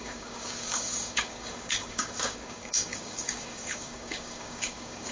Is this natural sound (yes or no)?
no